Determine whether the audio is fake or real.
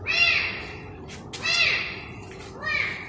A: real